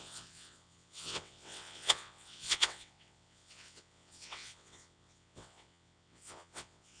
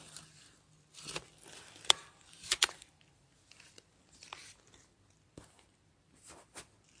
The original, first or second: second